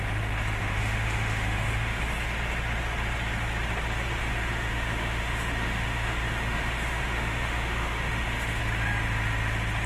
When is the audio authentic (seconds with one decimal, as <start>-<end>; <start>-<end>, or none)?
0.0-0.6; 2.0-4.2; 8.6-9.9